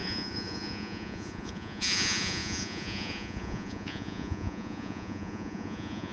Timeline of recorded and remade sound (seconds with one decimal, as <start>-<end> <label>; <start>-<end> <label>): 0.0-6.1 remade